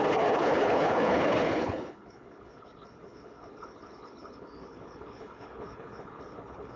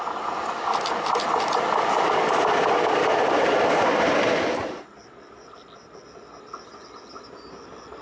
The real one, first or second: second